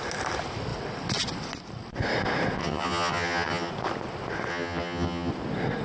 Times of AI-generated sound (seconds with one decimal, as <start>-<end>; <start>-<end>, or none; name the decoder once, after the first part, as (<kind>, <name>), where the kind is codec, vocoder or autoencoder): 2.6-3.7 (vocoder, HiFi-GAN); 4.5-5.3